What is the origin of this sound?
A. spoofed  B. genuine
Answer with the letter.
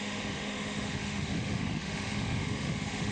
A